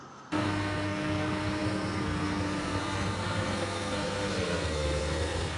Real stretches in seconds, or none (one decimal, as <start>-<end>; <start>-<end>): none